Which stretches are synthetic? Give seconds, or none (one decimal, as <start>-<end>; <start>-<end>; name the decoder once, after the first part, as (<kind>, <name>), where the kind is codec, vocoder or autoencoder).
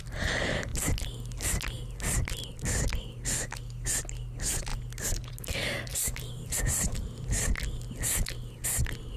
5.9-7.5 (vocoder, BigVGAN v2)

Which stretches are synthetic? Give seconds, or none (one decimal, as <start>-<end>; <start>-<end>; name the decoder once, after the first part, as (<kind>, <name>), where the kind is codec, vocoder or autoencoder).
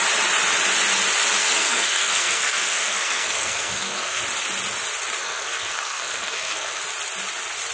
1.4-4.2 (codec, SNAC); 5.2-6.8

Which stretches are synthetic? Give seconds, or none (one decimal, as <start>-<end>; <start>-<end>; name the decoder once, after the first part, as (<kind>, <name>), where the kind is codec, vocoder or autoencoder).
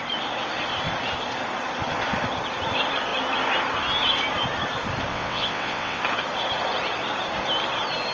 5.1-6.0 (vocoder, WaveNeXt)